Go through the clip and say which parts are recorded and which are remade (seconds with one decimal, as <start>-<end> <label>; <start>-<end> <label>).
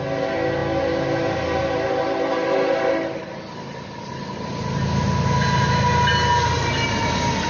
0.0-7.5 recorded